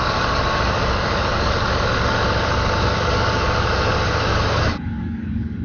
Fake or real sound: fake